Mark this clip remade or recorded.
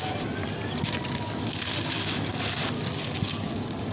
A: recorded